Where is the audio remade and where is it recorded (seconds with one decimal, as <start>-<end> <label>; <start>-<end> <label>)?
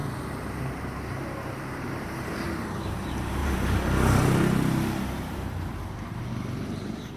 0.0-0.6 recorded; 0.6-3.4 remade; 3.4-6.1 recorded; 6.1-7.2 remade